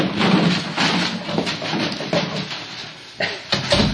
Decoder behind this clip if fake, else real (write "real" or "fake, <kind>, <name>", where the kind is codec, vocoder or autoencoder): real